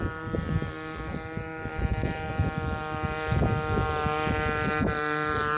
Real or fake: real